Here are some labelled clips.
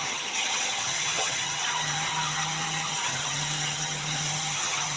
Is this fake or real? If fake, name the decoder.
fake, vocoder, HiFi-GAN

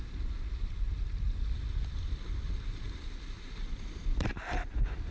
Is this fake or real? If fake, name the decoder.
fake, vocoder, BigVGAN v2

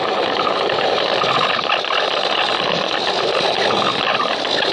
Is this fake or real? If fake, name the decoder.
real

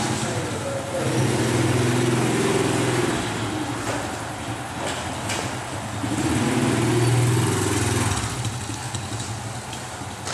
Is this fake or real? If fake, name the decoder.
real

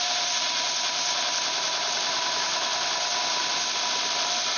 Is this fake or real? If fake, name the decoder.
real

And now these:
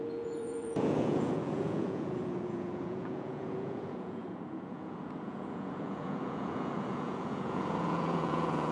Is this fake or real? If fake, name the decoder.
fake, vocoder, Vocos